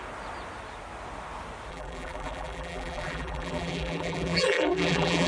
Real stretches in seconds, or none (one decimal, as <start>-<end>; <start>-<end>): 0.0-1.7

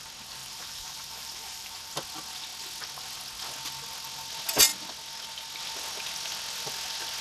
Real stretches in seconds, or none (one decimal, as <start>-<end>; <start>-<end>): 0.0-0.4; 1.9-7.2

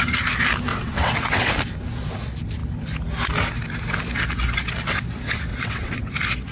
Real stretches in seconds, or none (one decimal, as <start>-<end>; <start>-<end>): 0.0-0.7; 1.5-5.5; 6.1-6.5

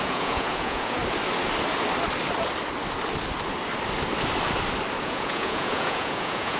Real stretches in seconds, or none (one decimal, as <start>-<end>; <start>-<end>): 1.0-5.0

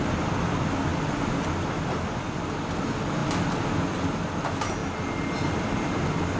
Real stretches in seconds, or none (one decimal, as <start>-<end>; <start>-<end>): 0.0-6.4